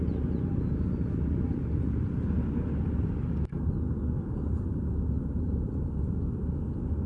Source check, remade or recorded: recorded